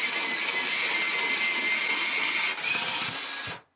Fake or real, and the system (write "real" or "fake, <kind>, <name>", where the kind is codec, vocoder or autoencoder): real